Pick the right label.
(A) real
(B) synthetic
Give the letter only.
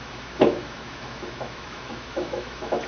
B